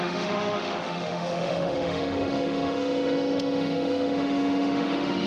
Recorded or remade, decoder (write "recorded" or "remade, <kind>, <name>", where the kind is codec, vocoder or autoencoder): remade, autoencoder, DAC-VAE